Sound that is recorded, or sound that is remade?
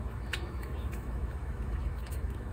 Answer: remade